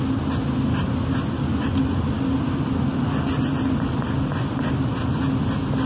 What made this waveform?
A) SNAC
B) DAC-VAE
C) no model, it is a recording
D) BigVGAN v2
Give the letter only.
C